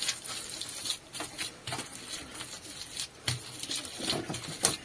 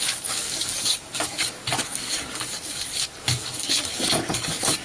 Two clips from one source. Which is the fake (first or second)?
second